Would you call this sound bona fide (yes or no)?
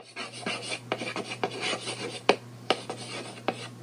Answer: yes